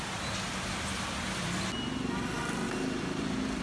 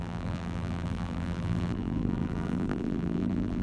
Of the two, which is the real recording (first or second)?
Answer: first